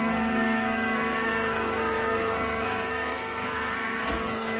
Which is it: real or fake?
fake